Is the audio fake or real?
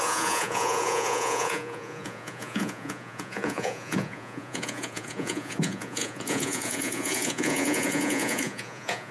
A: fake